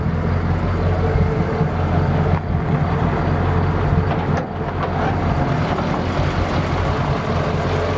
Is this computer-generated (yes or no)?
no